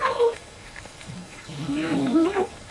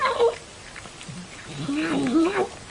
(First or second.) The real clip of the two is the second